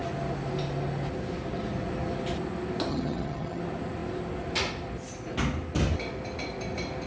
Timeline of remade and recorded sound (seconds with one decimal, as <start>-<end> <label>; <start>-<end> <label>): 0.0-2.9 recorded; 2.9-3.6 remade; 3.6-7.1 recorded